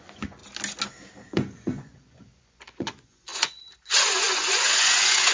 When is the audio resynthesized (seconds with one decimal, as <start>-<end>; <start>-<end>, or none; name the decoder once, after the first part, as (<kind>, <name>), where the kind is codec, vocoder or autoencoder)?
0.0-0.4 (vocoder, Vocos); 1.2-5.3

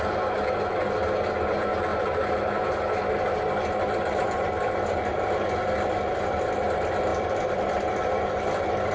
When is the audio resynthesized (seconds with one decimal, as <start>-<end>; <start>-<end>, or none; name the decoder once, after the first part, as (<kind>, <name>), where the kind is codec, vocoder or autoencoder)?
7.1-7.9 (vocoder, BigVGAN v2)

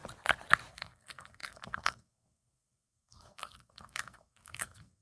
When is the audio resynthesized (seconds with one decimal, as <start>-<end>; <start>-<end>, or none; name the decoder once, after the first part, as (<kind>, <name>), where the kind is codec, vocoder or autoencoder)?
0.7-5.0 (codec, SNAC)

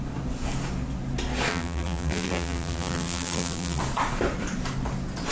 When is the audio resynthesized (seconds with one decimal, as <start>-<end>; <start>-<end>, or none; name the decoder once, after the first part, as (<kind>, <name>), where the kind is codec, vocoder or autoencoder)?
1.5-3.8 (vocoder, BigVGAN v2)

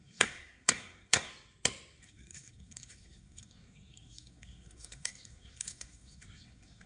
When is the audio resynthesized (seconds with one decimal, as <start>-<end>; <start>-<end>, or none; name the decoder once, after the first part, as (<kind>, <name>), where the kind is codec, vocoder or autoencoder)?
0.0-1.3 (codec, SNAC); 2.0-6.9